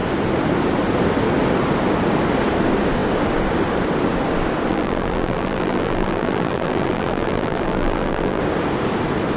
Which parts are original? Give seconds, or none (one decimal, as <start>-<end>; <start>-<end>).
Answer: 0.0-4.7; 8.4-9.4